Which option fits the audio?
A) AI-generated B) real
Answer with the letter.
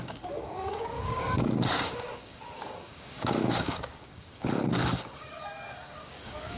A